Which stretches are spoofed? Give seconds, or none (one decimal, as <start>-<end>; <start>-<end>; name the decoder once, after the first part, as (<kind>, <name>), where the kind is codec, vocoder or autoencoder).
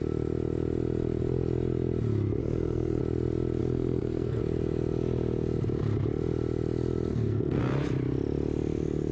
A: 2.4-3.0 (codec, SNAC); 3.6-4.4; 7.1-7.6